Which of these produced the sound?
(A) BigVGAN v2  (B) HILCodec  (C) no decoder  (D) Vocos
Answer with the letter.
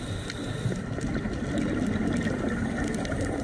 C